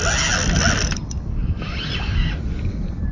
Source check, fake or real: real